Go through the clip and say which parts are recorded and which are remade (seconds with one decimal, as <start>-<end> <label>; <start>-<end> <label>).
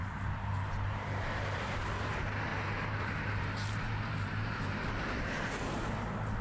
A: 0.0-2.1 remade; 2.1-2.5 recorded; 2.5-5.5 remade; 5.5-6.4 recorded